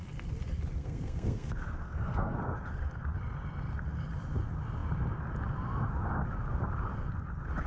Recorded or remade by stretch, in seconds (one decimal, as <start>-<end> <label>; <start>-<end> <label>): 0.0-0.8 recorded; 0.8-2.8 remade; 2.8-7.7 recorded